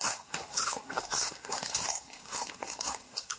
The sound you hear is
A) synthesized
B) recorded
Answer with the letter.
A